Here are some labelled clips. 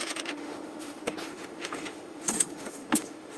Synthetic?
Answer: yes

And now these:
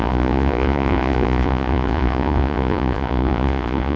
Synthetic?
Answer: yes